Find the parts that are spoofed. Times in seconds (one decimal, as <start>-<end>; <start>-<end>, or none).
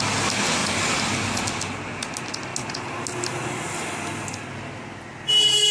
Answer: none